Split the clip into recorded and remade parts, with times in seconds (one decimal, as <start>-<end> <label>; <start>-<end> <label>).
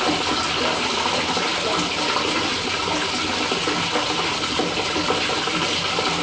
0.0-6.2 recorded